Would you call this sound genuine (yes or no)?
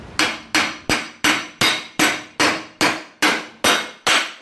yes